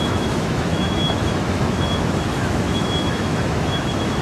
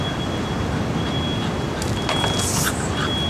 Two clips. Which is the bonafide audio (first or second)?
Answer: second